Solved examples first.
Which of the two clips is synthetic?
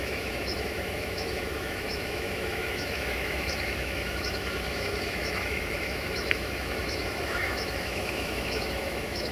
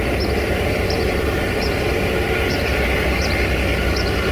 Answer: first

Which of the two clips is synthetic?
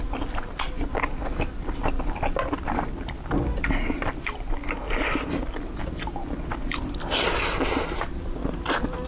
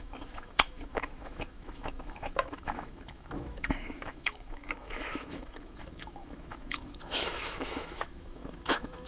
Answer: second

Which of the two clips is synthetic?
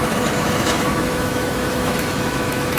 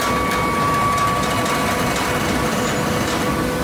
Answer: first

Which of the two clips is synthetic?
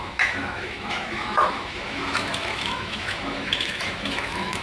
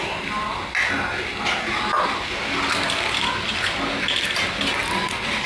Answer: first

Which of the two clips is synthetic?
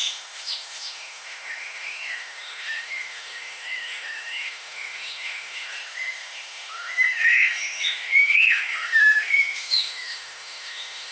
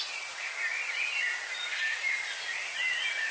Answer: first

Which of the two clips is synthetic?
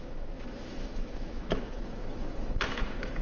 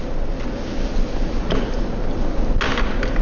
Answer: first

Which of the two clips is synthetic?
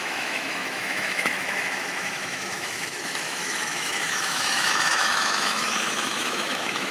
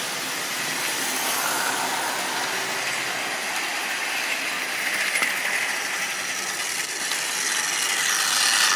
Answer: first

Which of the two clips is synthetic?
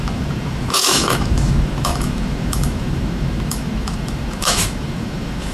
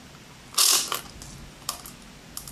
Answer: first